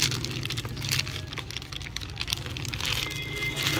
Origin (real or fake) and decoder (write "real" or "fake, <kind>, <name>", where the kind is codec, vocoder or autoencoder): real